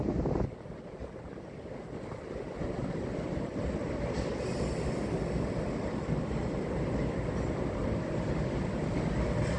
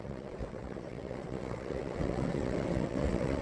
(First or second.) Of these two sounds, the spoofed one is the second